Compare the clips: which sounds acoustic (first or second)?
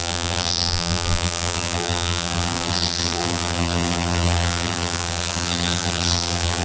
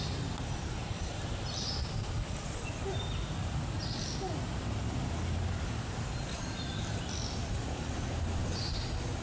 second